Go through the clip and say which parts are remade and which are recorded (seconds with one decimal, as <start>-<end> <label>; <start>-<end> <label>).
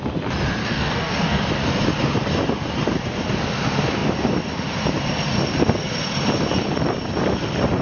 0.0-0.6 recorded; 0.6-1.4 remade; 1.4-7.8 recorded